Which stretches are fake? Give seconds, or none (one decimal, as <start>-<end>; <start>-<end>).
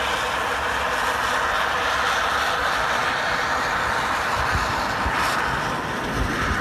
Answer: none